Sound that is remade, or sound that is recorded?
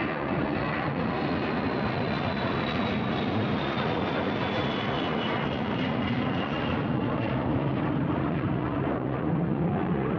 remade